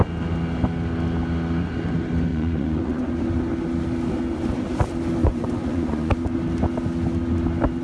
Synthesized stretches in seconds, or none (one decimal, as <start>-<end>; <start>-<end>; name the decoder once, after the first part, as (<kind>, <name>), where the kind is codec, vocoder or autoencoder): 2.3-3.1 (vocoder, Vocos); 5.2-6.1